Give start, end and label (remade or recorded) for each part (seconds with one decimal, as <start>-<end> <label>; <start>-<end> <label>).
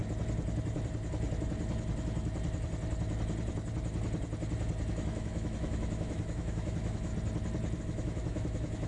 0.0-4.9 recorded; 4.9-7.1 remade; 7.1-7.8 recorded; 7.8-8.9 remade